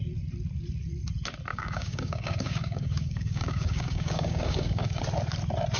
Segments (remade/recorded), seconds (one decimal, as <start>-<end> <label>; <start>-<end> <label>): 0.0-1.5 recorded; 1.5-5.0 remade; 5.0-5.8 recorded